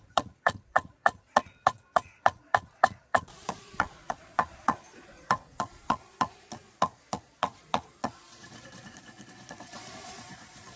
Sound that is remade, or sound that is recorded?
remade